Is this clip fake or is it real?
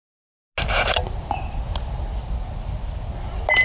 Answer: real